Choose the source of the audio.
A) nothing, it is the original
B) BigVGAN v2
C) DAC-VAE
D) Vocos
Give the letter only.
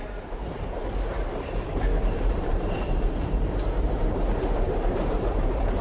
B